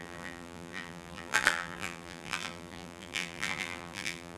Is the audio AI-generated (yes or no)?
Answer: yes